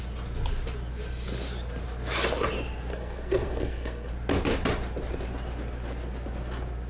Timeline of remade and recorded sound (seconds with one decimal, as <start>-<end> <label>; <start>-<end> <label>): 0.0-2.9 recorded; 2.9-4.1 remade; 4.1-6.9 recorded